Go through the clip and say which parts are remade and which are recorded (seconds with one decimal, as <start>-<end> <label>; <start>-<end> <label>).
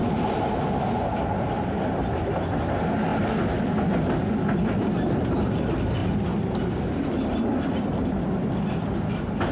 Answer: 0.0-9.5 recorded